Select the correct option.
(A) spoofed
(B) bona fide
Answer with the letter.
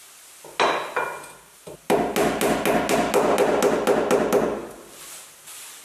B